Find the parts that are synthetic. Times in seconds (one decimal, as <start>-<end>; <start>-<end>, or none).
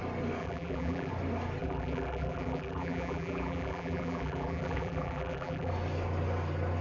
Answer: 0.4-1.1; 1.6-5.7